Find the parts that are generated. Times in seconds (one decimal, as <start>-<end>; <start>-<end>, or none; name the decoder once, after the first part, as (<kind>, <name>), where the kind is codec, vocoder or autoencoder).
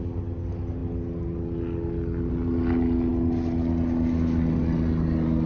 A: none